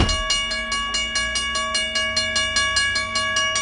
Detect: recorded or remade recorded